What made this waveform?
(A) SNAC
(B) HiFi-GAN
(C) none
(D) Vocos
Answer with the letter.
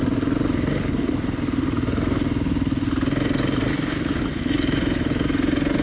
C